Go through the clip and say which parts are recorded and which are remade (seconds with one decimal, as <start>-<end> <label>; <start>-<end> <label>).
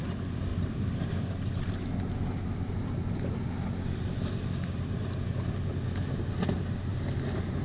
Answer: 0.0-7.6 recorded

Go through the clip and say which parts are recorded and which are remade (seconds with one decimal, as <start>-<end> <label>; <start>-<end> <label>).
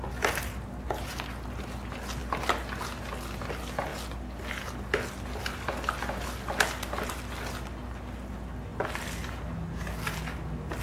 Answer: 0.0-10.8 recorded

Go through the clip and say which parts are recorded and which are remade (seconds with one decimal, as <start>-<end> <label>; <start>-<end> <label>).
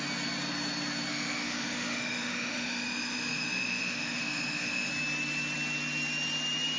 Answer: 0.0-1.1 recorded; 1.1-4.9 remade; 4.9-6.8 recorded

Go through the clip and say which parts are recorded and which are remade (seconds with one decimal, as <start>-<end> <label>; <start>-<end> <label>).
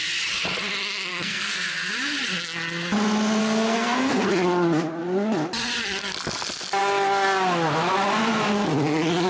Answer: 0.0-1.1 recorded; 1.1-1.9 remade; 1.9-3.4 recorded; 3.4-4.3 remade; 4.3-9.3 recorded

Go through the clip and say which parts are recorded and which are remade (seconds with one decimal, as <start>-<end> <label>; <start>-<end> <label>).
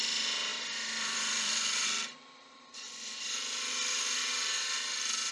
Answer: 0.0-0.5 recorded; 0.5-3.7 remade; 3.7-5.3 recorded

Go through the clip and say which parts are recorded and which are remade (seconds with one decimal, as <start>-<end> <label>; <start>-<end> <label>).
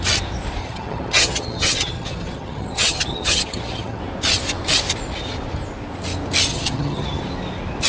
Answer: 0.0-0.6 recorded; 0.6-4.0 remade; 4.0-6.5 recorded; 6.5-7.2 remade; 7.2-7.9 recorded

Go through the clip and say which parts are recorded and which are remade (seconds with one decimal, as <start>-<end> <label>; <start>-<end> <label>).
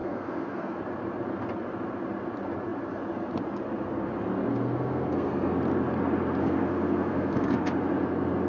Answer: 0.0-0.8 remade; 0.8-4.5 recorded; 4.5-5.6 remade; 5.6-6.4 recorded; 6.4-7.6 remade; 7.6-8.5 recorded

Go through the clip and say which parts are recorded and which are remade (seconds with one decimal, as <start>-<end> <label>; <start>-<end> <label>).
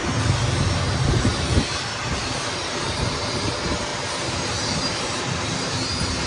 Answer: 0.0-0.9 recorded; 0.9-1.9 remade; 1.9-2.5 recorded; 2.5-6.3 remade